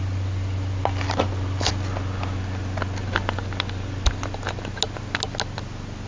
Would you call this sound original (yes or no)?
yes